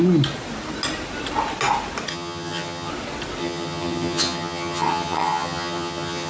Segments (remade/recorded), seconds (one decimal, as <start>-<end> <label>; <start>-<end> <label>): 0.0-2.1 recorded; 2.1-2.9 remade; 2.9-3.4 recorded; 3.4-6.3 remade